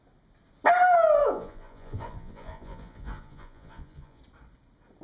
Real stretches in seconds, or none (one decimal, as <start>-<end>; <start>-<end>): 0.0-1.2; 4.2-5.0